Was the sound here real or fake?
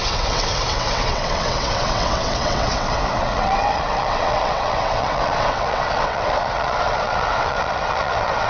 fake